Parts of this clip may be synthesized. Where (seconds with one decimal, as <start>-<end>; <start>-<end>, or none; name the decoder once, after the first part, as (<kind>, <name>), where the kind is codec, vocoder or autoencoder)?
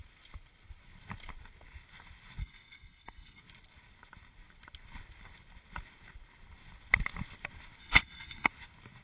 2.4-3.4 (codec, SNAC); 7.8-8.5